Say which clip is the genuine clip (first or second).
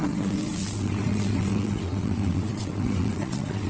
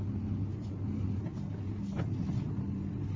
second